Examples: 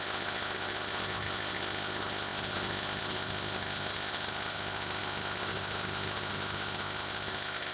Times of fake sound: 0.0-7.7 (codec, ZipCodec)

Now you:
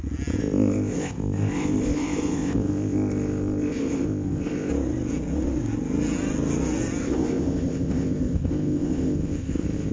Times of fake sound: 0.4-4.7 (codec, ZipCodec); 7.0-9.9

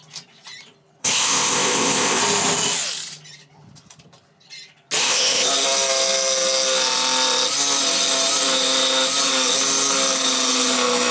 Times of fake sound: 1.0-2.2 (codec, ZipCodec); 5.0-5.5